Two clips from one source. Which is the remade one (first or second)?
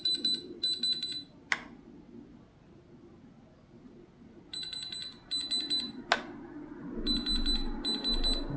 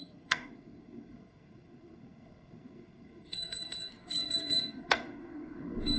second